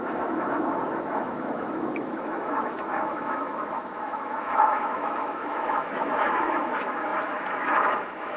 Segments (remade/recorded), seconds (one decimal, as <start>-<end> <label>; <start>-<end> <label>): 0.0-8.4 remade